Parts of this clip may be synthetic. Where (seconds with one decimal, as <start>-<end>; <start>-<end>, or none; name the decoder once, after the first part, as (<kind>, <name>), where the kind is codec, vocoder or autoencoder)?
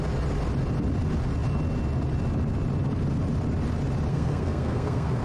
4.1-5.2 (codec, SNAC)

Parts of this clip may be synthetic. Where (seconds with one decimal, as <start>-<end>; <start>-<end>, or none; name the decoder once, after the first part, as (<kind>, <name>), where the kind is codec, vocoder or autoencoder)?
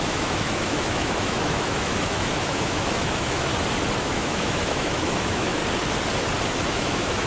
0.0-3.5 (autoencoder, DAC-VAE); 4.0-5.6; 6.7-7.3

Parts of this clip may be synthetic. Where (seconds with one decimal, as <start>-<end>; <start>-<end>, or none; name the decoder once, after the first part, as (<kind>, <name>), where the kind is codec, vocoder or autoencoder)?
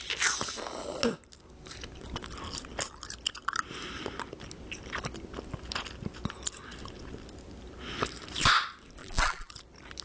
9.0-9.5 (vocoder, BigVGAN v2)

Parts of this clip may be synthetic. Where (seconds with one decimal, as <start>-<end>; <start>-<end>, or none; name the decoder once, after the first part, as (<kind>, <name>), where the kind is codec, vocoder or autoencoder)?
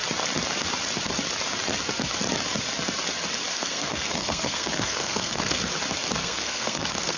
3.5-5.7 (codec, SNAC); 6.2-7.2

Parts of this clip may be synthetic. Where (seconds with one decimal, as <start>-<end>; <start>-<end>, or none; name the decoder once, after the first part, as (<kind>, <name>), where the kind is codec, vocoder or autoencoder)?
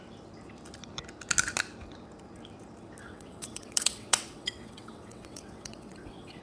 3.0-6.4 (vocoder, WaveNeXt)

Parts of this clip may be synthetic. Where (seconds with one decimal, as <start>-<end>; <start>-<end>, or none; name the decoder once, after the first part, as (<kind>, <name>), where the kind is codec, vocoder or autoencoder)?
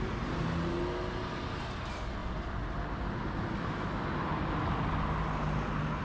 none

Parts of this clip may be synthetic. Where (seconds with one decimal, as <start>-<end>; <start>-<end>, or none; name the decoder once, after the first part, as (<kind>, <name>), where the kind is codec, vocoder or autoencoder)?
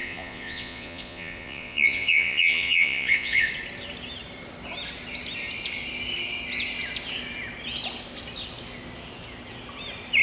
0.0-3.5 (vocoder, Vocos)